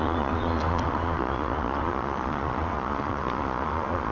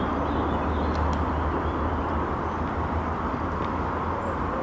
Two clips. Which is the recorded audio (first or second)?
second